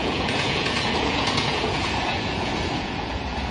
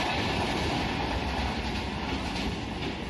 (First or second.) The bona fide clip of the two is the second